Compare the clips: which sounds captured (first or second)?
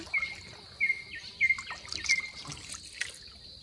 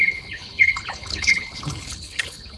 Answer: first